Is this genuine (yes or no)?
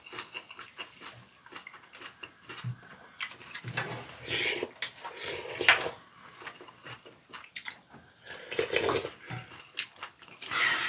yes